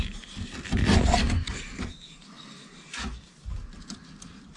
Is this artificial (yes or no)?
no